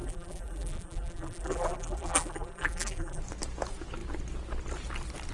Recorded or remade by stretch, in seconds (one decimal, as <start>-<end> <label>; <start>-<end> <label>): 0.0-3.2 remade; 3.2-5.3 recorded